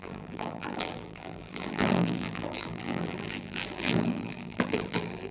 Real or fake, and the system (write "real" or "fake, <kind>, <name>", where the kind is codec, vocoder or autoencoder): fake, vocoder, BigVGAN v2